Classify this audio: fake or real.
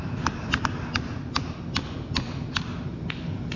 real